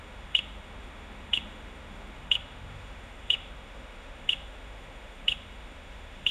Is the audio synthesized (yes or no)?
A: yes